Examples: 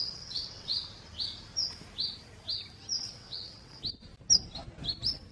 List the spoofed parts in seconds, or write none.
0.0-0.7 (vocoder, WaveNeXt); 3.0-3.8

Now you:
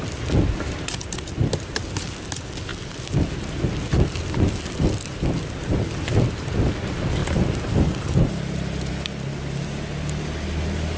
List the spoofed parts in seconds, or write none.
none